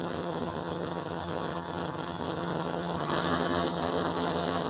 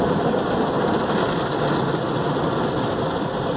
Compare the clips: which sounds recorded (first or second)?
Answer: second